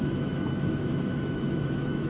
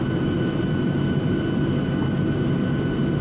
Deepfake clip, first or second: first